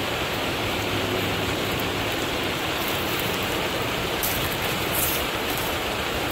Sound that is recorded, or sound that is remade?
remade